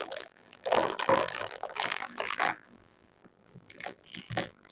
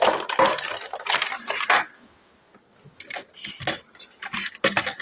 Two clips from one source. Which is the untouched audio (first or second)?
second